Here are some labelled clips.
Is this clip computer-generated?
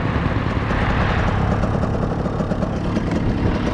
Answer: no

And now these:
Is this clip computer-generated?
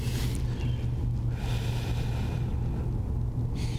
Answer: no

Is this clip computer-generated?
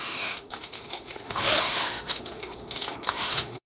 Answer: yes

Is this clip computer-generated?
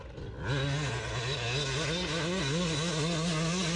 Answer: no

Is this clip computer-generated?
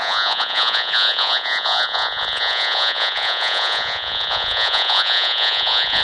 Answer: yes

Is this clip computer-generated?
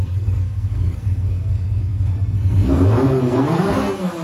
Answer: yes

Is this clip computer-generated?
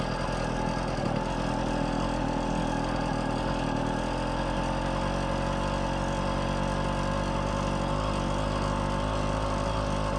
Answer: no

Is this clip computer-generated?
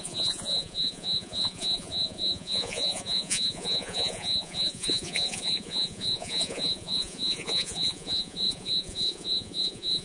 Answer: yes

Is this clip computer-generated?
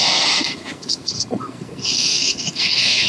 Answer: yes